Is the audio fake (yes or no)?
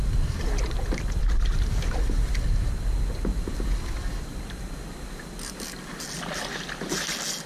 no